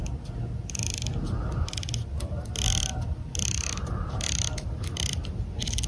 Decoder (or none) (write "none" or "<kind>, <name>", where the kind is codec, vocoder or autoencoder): none